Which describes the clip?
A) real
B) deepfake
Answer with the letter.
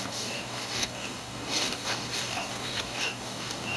B